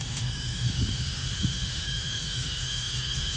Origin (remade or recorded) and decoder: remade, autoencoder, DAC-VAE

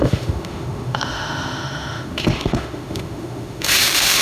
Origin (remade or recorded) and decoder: remade, autoencoder, DAC-VAE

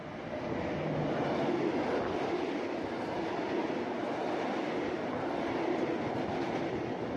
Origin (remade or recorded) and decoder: recorded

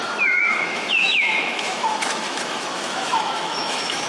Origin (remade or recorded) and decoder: remade, autoencoder, DAC-VAE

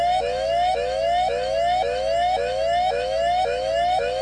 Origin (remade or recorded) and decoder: remade, autoencoder, DAC-VAE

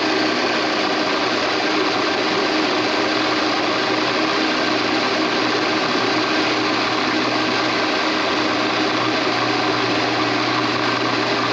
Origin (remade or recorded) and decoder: recorded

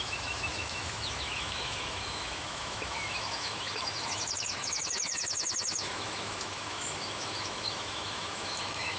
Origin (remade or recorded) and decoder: remade, autoencoder, DAC-VAE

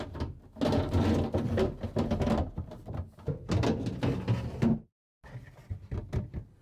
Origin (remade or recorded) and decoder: recorded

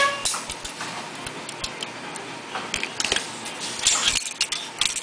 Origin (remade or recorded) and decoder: recorded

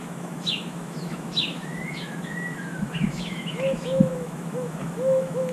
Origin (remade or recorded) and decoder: remade, autoencoder, DAC-VAE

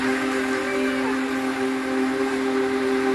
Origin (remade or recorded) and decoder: recorded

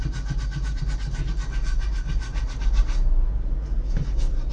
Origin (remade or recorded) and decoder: recorded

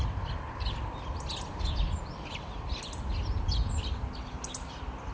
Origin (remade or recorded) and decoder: recorded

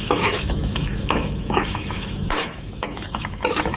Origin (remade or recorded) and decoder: remade, autoencoder, DAC-VAE